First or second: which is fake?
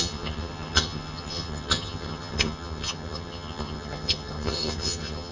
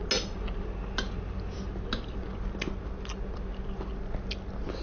first